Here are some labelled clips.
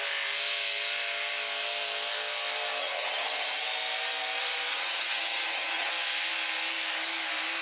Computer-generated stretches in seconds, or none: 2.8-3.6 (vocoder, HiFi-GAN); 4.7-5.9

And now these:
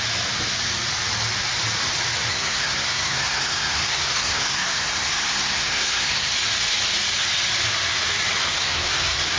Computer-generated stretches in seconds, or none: 2.3-6.3 (codec, SNAC); 8.5-9.4

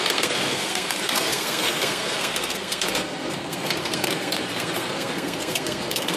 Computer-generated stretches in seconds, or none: 0.0-6.2 (codec, SNAC)

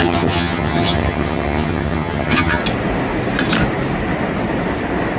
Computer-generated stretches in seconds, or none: 0.0-2.6 (vocoder, HiFi-GAN)

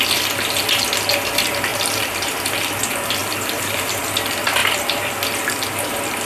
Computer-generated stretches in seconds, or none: 1.7-2.5 (vocoder, BigVGAN v2); 3.2-4.0